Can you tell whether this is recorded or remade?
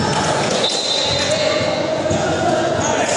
remade